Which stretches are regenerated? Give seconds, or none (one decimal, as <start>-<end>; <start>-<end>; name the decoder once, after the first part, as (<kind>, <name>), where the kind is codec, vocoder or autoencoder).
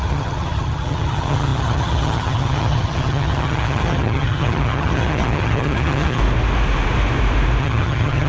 0.0-6.2 (vocoder, HiFi-GAN); 7.6-8.3